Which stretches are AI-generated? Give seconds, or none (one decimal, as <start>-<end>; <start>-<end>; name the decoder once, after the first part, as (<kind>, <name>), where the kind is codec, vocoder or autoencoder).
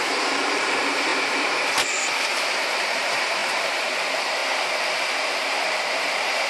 0.0-4.4 (vocoder, BigVGAN v2); 5.2-6.5